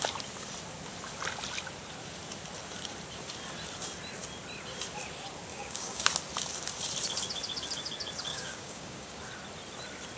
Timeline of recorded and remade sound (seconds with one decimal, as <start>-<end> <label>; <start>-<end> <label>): 0.0-5.5 recorded; 5.5-6.1 remade; 6.1-8.3 recorded; 8.3-9.2 remade; 9.2-10.2 recorded